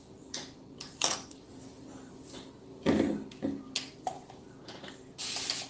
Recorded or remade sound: recorded